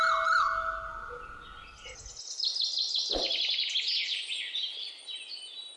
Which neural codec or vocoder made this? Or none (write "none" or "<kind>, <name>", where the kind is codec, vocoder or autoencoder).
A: none